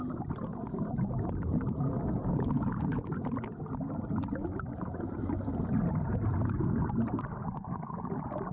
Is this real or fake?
real